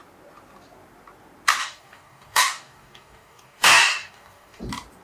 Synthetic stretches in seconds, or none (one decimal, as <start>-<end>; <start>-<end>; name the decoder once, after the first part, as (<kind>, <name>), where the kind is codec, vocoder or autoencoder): 1.6-4.6 (codec, DAC)